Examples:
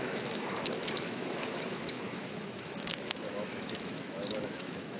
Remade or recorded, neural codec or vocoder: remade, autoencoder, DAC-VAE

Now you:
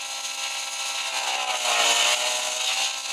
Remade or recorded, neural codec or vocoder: recorded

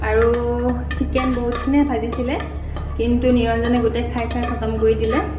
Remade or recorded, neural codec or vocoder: recorded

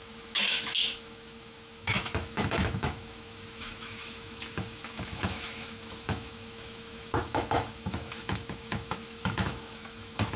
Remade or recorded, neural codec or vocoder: remade, autoencoder, DAC-VAE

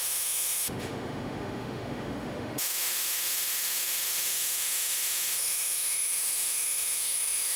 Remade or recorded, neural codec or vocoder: remade, autoencoder, DAC-VAE